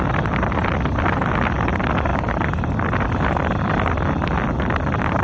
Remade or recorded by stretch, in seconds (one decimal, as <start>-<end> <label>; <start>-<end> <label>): 0.0-2.1 recorded; 2.1-2.7 remade; 2.7-5.2 recorded